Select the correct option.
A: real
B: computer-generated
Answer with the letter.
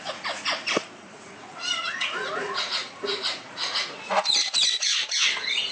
B